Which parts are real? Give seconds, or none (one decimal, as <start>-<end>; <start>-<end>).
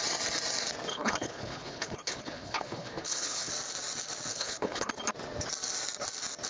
0.0-0.9; 3.5-4.3; 4.9-6.5